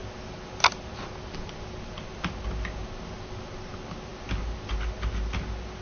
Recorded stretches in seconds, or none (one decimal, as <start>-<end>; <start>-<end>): 0.0-5.8